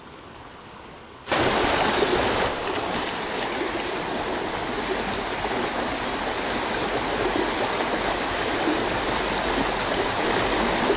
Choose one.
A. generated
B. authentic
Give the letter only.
B